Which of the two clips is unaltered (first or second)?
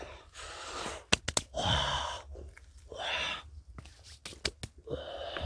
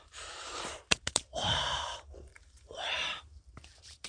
first